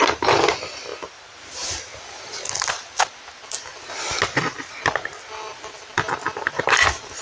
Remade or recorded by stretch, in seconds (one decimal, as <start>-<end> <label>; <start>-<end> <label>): 0.0-7.2 recorded